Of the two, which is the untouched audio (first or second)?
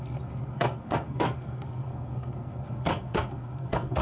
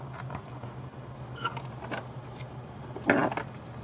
second